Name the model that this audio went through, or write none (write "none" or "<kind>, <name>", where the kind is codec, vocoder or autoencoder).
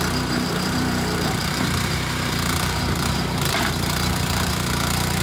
vocoder, BigVGAN v2